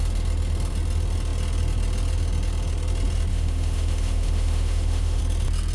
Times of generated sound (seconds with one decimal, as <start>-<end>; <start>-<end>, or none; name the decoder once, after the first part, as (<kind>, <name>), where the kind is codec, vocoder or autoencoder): 3.3-5.2 (autoencoder, DAC-VAE)